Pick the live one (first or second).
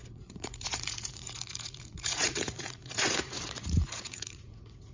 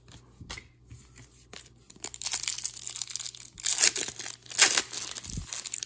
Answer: second